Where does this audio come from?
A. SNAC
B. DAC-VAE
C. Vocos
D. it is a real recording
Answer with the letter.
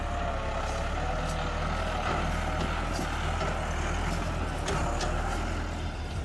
D